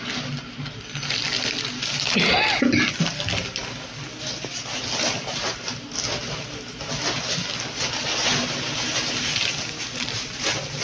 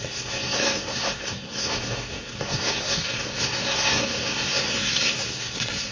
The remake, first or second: second